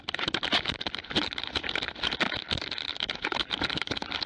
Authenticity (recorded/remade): recorded